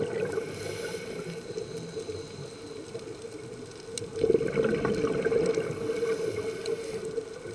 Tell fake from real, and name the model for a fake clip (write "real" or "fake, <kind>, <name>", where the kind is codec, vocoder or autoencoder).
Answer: real